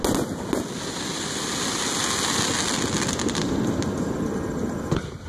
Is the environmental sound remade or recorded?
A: recorded